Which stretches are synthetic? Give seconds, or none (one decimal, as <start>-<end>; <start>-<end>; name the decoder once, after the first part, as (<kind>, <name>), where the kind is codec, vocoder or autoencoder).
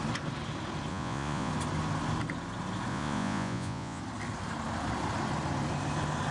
0.9-1.5 (vocoder, Vocos); 2.9-4.0